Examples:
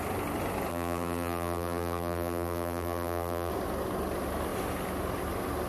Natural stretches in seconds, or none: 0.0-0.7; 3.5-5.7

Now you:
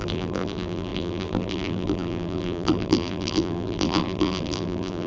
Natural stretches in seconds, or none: none

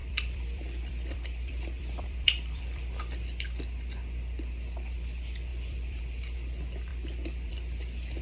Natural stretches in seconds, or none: 2.9-5.5; 6.0-8.2

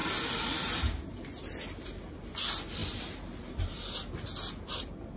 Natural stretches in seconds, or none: 0.0-5.2

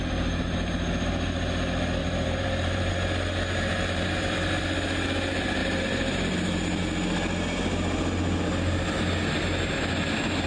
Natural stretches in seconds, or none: 0.0-2.0; 2.9-3.7; 4.6-5.6; 6.8-10.5

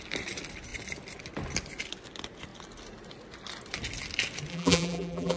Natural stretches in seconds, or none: 0.0-4.5

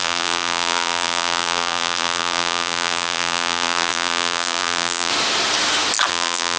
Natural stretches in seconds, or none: 5.1-6.1

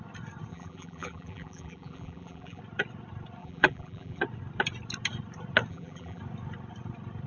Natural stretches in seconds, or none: 0.0-0.5; 2.6-3.4; 4.2-5.7; 6.2-7.3